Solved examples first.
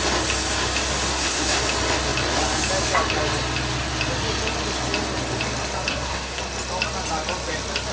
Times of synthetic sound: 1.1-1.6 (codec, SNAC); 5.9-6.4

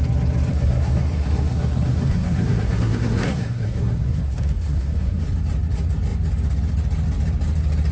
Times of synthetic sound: 0.5-5.2 (codec, SNAC)

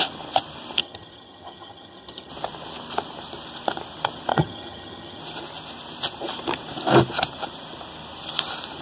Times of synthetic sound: 0.8-2.3 (vocoder, HiFi-GAN); 4.3-5.2

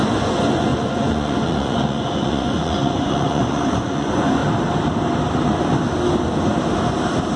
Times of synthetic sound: 0.0-4.4 (vocoder, Vocos)

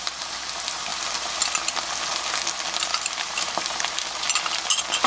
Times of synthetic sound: 2.9-4.2 (vocoder, BigVGAN v2)

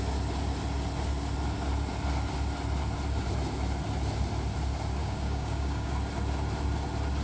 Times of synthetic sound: 5.0-5.9 (codec, DAC)